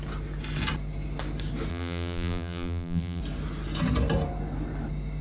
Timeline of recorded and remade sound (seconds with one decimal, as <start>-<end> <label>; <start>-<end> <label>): 0.0-1.7 recorded; 1.7-3.2 remade; 3.2-5.2 recorded